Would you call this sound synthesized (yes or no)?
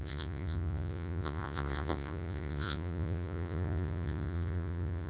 yes